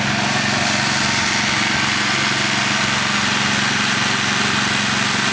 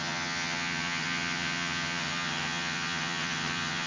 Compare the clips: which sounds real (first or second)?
first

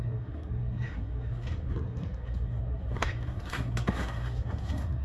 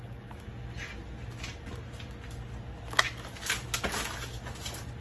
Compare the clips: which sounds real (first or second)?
second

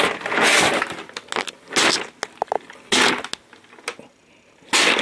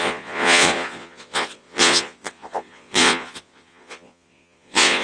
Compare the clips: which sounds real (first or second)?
first